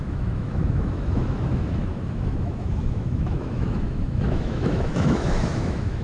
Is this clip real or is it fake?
fake